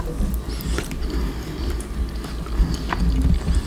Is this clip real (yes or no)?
yes